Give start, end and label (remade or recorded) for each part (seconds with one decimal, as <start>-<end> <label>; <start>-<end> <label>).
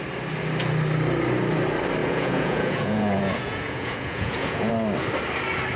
0.0-2.0 recorded; 2.0-4.7 remade; 4.7-5.8 recorded